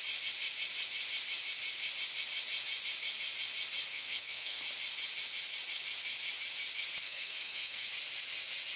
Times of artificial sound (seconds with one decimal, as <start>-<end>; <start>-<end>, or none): 3.9-4.6; 7.0-7.9